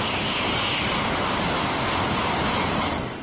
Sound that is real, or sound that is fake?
real